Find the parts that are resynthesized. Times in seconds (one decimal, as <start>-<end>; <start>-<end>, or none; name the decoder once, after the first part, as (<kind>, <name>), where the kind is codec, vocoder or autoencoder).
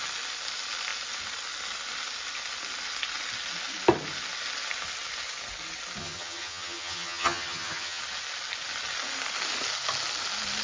6.0-8.0 (vocoder, HiFi-GAN)